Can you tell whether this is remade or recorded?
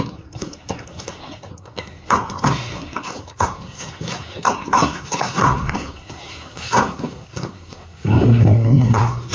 remade